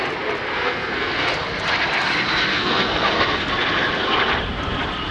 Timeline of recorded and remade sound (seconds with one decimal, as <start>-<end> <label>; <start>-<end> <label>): 0.0-0.5 recorded; 0.5-1.3 remade; 1.3-2.5 recorded; 2.5-3.5 remade; 3.5-5.1 recorded